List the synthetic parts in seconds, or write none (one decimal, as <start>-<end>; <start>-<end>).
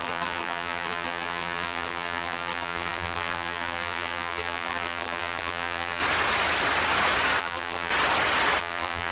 0.0-6.0; 7.4-7.9; 8.6-9.1